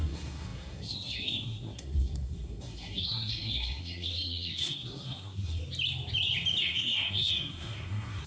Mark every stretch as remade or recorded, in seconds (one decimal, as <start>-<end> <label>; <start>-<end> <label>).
0.0-5.6 remade; 5.6-6.6 recorded; 6.6-8.3 remade